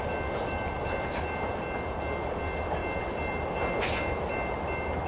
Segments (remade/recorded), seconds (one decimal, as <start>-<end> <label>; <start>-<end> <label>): 0.0-5.1 recorded